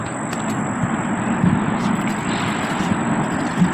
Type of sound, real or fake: fake